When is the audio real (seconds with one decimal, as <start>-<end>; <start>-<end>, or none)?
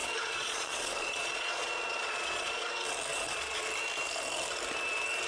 2.7-3.1; 3.6-5.3